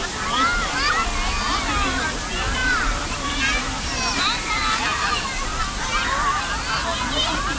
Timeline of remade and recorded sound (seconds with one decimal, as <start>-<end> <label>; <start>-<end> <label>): 0.0-2.6 recorded; 2.6-4.6 remade; 4.6-7.6 recorded